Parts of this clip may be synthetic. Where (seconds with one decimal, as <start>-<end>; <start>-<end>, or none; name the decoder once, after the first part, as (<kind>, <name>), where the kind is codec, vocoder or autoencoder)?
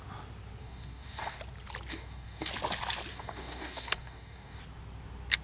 0.6-1.4 (codec, DAC); 1.9-2.5; 3.1-4.6